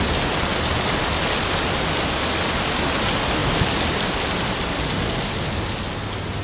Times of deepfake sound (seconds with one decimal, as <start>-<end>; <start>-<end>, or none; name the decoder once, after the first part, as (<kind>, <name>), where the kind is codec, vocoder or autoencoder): none